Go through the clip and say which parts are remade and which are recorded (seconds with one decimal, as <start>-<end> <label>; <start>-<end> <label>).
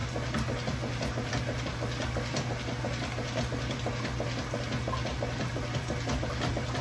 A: 0.0-6.8 recorded